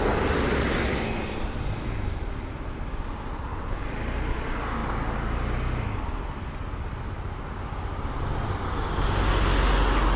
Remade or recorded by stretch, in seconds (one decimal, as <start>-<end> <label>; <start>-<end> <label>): 0.0-10.2 recorded

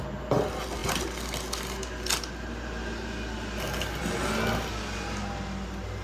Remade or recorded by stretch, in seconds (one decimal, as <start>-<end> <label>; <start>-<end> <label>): 0.0-6.0 recorded

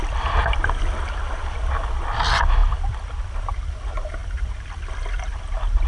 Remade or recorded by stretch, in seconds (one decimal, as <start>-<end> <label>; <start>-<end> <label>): 0.0-4.2 recorded; 4.2-4.8 remade; 4.8-5.9 recorded

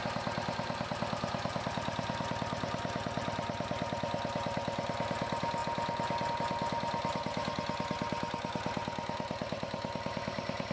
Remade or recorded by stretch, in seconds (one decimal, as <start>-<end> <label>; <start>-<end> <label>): 0.0-10.7 recorded

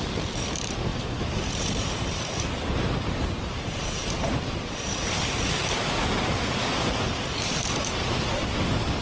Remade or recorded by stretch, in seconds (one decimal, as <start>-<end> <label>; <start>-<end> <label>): 0.0-9.0 remade